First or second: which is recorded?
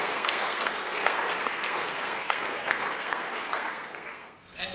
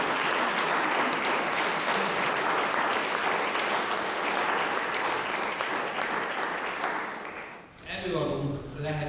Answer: second